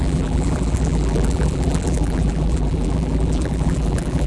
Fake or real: fake